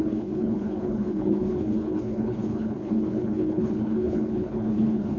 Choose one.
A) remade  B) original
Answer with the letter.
A